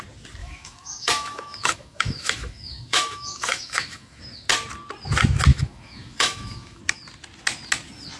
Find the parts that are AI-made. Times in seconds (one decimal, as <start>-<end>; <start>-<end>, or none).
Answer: 0.4-4.2; 5.5-6.8

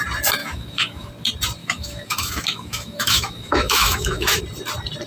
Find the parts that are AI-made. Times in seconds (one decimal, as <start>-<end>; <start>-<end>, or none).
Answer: 0.4-1.1; 1.6-4.4